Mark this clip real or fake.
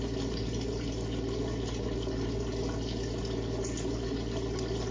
real